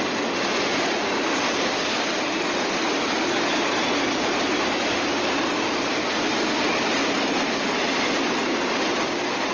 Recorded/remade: recorded